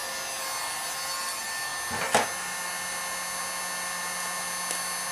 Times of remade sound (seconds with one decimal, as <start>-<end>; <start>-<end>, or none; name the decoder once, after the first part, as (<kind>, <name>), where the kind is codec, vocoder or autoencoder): none